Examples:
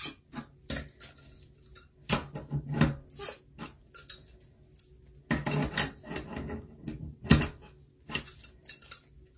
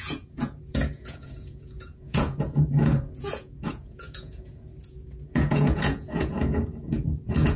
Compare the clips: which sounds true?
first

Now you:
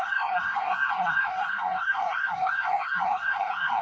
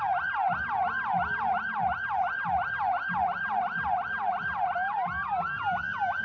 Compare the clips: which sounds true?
second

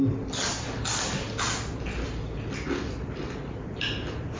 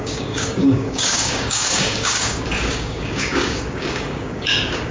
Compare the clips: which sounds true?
first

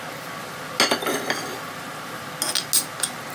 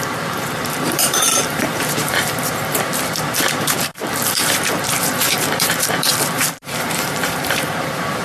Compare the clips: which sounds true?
first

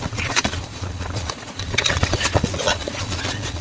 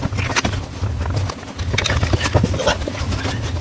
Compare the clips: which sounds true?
second